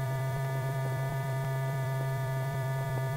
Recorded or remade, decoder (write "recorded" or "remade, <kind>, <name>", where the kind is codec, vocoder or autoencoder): remade, vocoder, BigVGAN v2